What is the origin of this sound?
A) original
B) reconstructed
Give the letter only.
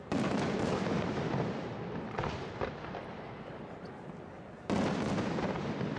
A